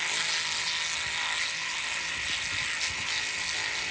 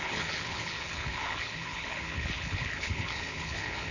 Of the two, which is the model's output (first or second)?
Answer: second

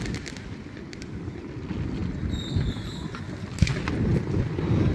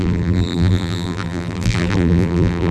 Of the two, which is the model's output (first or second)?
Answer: second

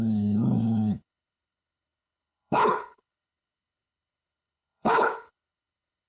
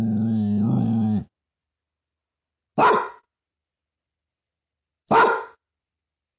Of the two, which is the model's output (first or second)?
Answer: first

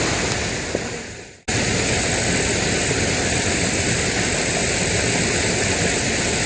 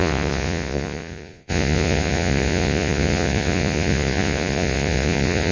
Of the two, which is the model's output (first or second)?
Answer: second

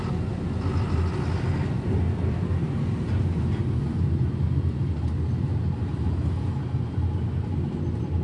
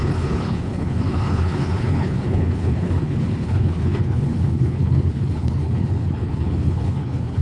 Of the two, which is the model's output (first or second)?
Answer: second